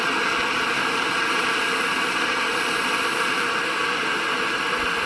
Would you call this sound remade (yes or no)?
no